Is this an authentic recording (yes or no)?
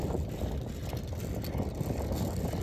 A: yes